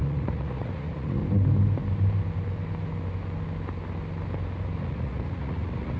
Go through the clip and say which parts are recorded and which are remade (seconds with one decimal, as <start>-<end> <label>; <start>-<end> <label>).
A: 0.0-1.2 remade; 1.2-4.8 recorded; 4.8-6.0 remade